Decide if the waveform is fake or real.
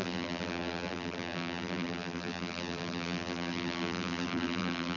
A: fake